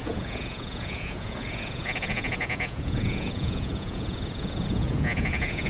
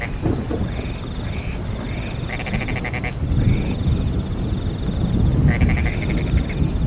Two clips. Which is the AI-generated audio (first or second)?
first